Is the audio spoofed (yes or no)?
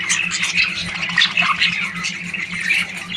no